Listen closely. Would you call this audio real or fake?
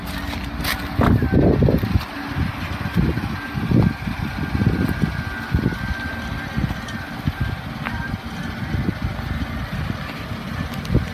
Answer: real